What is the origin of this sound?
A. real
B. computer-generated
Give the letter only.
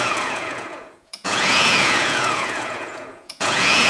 B